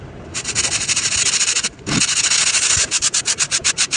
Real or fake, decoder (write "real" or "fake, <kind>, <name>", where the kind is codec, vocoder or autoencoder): real